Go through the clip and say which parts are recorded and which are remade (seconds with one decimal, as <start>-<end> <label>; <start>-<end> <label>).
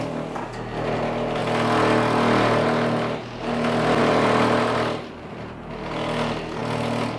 0.0-7.2 recorded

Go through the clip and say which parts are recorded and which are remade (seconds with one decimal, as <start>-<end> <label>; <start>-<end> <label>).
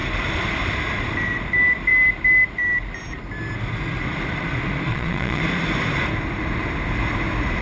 0.0-4.9 recorded; 4.9-5.4 remade; 5.4-7.6 recorded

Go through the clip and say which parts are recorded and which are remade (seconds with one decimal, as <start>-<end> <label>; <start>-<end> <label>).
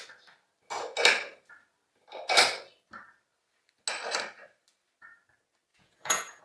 0.0-5.7 recorded; 5.7-6.4 remade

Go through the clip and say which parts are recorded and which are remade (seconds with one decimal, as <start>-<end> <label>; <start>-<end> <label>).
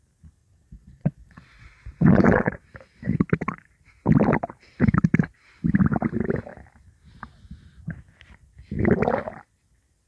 0.0-0.4 recorded; 0.4-2.5 remade; 2.5-10.1 recorded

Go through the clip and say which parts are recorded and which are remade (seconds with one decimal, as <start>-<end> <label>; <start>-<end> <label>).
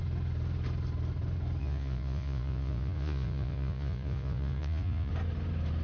0.0-1.6 recorded; 1.6-5.1 remade; 5.1-5.8 recorded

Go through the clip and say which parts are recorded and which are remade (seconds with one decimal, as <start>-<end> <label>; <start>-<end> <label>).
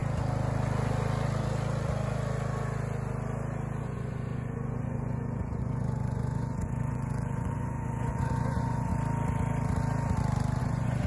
0.0-3.8 recorded; 3.8-8.9 remade; 8.9-10.6 recorded; 10.6-11.1 remade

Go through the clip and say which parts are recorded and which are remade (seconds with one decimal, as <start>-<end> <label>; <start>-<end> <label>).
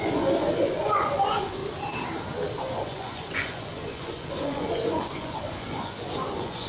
0.0-1.6 remade; 1.6-2.6 recorded; 2.6-6.7 remade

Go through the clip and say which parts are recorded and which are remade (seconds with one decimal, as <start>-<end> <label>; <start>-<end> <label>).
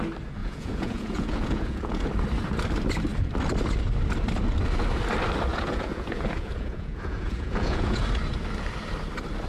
0.0-0.4 recorded; 0.4-2.1 remade; 2.1-5.5 recorded; 5.5-8.0 remade; 8.0-9.5 recorded